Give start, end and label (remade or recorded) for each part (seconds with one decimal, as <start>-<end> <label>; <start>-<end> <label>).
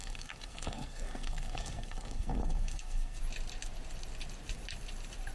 0.0-3.2 remade; 3.2-5.3 recorded